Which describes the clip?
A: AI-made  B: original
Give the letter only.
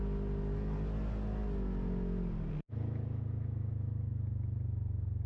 B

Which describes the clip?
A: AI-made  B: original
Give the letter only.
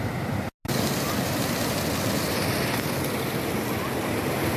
B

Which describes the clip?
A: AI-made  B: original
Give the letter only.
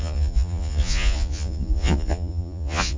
A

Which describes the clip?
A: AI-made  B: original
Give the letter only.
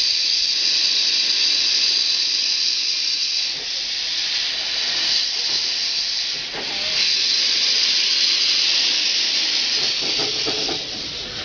B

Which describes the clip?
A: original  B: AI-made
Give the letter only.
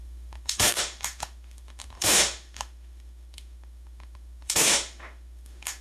B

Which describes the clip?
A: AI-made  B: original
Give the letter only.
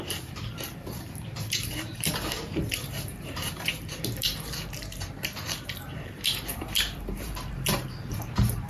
A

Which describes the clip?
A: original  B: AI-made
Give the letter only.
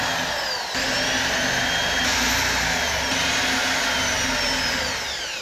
A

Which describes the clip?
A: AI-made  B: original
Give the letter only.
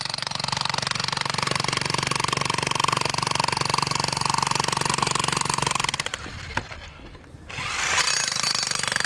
B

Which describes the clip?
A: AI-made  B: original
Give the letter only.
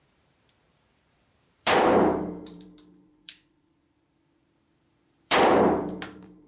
A